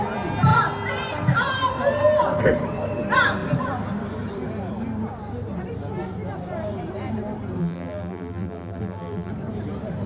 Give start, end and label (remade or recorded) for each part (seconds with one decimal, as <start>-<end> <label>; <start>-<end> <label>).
0.0-7.6 recorded; 7.6-9.3 remade; 9.3-10.1 recorded